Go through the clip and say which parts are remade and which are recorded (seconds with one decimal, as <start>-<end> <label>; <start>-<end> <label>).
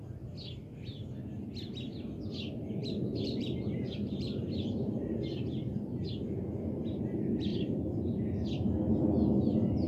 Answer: 0.0-2.8 recorded; 2.8-7.0 remade; 7.0-7.5 recorded; 7.5-8.3 remade; 8.3-9.9 recorded